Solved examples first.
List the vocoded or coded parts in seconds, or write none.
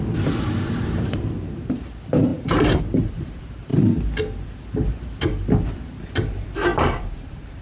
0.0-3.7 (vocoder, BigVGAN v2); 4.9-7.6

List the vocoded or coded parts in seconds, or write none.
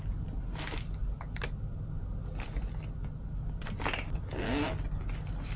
none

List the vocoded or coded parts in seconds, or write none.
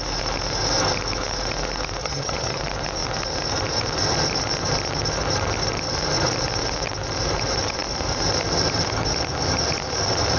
2.0-2.6 (vocoder, HiFi-GAN)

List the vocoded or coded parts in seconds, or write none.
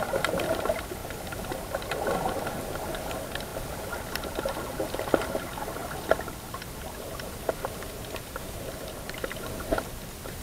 none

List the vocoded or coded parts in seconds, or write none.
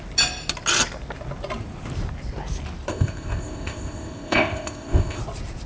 2.9-5.2 (codec, ZipCodec)